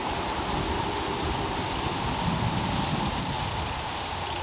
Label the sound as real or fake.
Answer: real